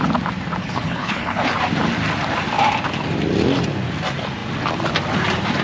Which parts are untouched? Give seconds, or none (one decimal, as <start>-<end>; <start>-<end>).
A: 0.0-0.6; 1.4-5.6